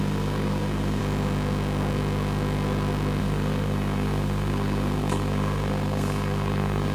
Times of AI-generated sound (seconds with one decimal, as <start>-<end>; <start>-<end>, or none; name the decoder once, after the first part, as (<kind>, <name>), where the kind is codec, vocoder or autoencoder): 0.0-1.0 (codec, SNAC); 3.2-6.9